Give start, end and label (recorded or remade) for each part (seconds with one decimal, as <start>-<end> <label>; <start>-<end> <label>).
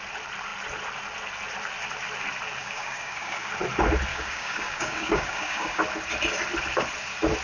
0.0-2.6 recorded; 2.6-3.5 remade; 3.5-4.1 recorded; 4.1-5.8 remade; 5.8-7.4 recorded